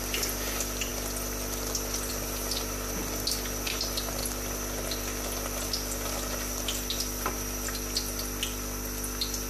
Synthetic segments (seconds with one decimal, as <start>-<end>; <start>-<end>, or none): none